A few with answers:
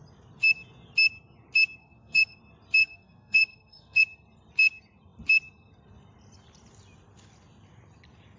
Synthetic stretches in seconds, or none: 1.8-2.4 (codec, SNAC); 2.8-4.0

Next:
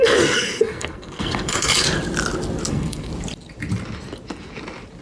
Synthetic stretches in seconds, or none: 0.0-1.7 (codec, SNAC); 2.7-3.1

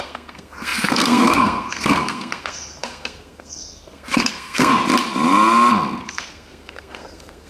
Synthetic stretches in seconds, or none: 0.0-4.7 (codec, SNAC); 6.0-7.5

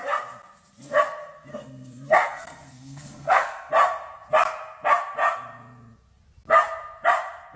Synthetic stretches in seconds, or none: 1.5-3.7 (codec, SNAC)